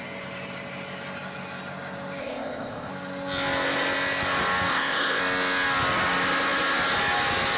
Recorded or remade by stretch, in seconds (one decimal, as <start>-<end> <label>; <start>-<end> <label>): 0.0-2.2 recorded; 2.2-2.9 remade; 2.9-4.7 recorded; 4.7-5.2 remade; 5.2-7.6 recorded